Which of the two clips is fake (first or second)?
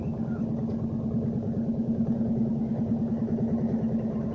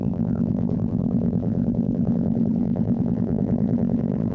second